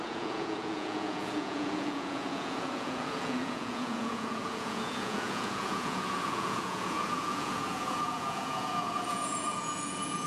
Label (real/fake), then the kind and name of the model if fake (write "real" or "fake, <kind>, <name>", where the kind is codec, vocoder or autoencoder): fake, vocoder, Vocos